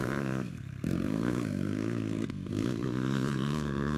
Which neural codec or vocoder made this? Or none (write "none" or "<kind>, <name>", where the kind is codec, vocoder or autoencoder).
codec, SNAC